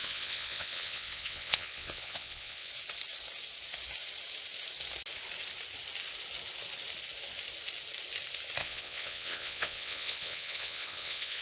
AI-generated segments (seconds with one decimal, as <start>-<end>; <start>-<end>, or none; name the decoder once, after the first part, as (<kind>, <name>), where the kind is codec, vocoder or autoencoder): 0.0-2.7 (vocoder, WaveNeXt); 8.6-11.4